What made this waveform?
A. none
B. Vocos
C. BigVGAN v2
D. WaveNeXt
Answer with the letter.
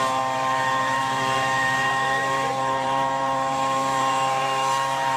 C